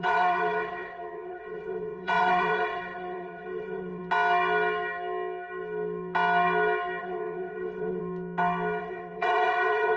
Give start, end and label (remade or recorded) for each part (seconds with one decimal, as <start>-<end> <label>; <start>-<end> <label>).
0.0-4.0 remade; 4.0-7.0 recorded; 7.0-8.0 remade; 8.0-8.8 recorded; 8.8-10.0 remade